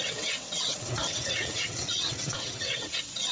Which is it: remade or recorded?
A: remade